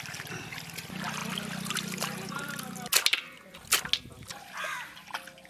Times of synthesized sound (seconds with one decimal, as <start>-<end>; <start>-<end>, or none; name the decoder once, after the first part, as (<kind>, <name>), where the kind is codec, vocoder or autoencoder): none